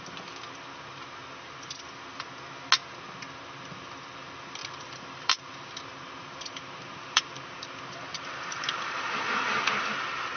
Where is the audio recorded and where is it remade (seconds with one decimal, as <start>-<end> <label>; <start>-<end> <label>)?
0.0-4.6 recorded; 4.6-9.7 remade; 9.7-10.4 recorded